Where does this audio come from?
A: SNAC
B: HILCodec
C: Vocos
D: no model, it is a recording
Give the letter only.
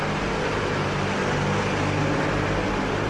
D